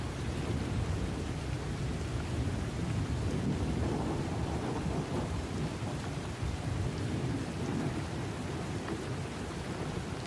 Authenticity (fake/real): fake